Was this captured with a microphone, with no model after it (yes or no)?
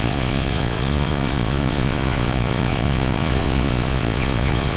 no